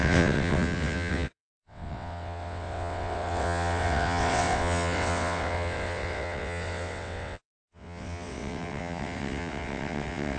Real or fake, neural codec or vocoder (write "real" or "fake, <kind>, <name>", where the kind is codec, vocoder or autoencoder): fake, vocoder, WaveNeXt